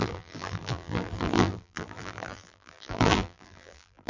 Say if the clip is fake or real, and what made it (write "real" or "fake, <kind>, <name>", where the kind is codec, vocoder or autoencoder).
fake, vocoder, BigVGAN v2